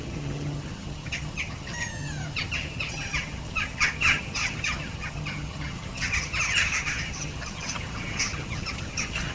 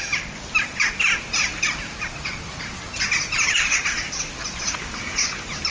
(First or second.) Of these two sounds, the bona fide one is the second